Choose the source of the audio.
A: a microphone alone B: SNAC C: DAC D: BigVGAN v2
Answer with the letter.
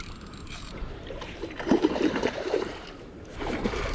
D